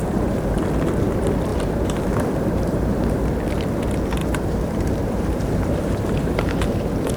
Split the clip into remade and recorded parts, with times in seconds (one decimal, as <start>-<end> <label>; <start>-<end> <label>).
0.0-0.5 remade; 0.5-1.5 recorded; 1.5-3.2 remade; 3.2-4.2 recorded; 4.2-7.2 remade